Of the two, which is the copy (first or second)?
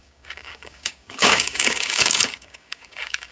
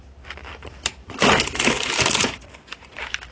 first